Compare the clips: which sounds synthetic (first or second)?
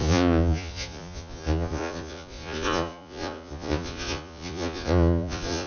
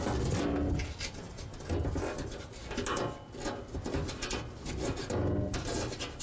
first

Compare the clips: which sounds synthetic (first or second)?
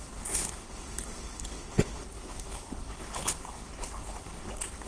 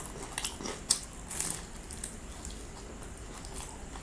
first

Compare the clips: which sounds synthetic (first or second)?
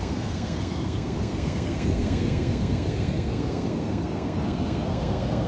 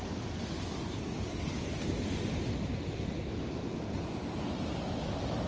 first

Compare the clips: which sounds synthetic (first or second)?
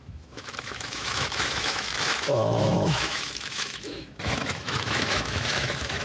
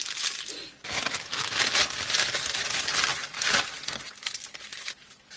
first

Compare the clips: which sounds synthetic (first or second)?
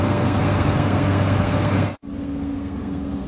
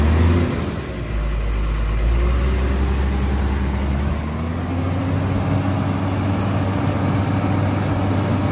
first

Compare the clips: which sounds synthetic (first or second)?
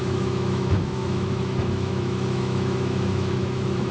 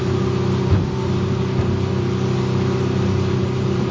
first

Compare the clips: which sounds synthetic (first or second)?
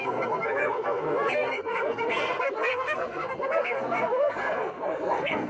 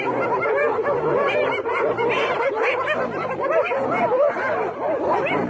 first